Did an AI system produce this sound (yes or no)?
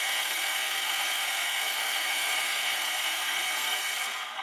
yes